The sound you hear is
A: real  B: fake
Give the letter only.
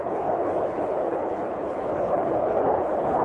B